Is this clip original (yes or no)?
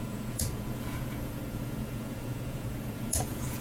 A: no